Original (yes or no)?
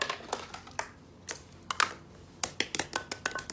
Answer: yes